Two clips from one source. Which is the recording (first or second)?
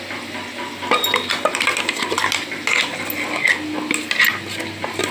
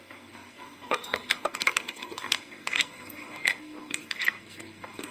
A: first